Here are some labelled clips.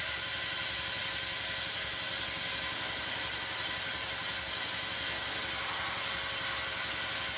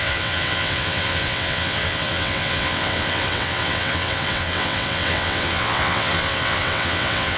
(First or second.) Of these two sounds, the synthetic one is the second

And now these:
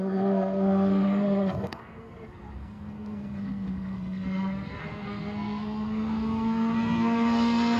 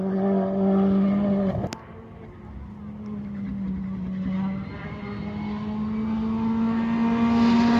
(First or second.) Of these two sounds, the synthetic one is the first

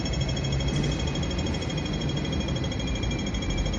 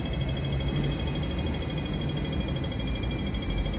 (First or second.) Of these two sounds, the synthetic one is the first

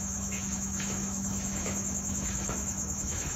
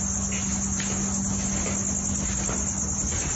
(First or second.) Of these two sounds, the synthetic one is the first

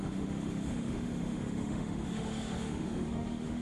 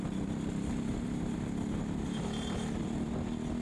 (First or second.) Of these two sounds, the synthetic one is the first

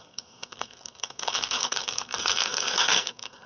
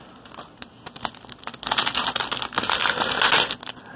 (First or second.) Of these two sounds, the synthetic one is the first